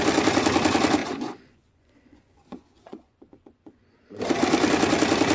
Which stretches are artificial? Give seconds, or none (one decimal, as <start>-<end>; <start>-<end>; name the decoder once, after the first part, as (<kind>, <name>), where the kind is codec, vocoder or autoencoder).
1.0-4.2 (vocoder, Vocos)